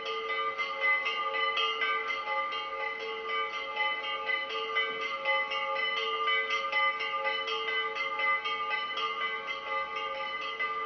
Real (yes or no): yes